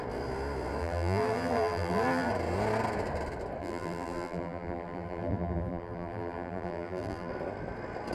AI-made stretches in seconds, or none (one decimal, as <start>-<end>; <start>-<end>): 0.8-2.3; 3.6-7.3